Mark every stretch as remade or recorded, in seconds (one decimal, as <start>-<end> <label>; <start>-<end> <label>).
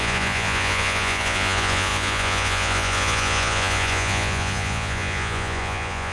0.0-6.1 remade